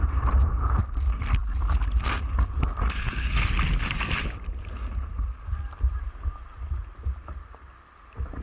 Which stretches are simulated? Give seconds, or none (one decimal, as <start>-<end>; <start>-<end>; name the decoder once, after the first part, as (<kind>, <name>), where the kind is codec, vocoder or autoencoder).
none